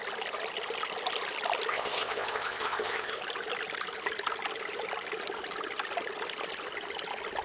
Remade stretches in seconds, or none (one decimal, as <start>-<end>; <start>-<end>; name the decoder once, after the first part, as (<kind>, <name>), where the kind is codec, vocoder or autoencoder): 1.7-3.2 (codec, ZipCodec)